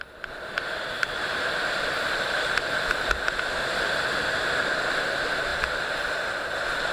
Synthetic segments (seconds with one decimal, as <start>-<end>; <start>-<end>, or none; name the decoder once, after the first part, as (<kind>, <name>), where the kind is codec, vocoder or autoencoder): none